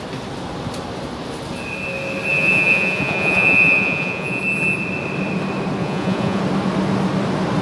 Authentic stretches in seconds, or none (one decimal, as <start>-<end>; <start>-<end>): 0.0-2.3; 4.4-5.8; 6.4-7.6